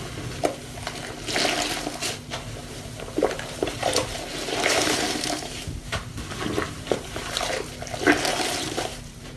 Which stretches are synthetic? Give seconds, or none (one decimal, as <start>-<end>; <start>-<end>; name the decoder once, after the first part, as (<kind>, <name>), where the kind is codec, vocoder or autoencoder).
2.6-7.4 (vocoder, BigVGAN v2); 8.3-9.4